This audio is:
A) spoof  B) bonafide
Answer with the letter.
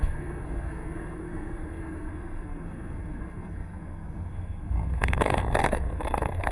A